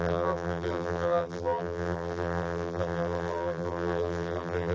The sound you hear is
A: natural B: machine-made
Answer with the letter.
B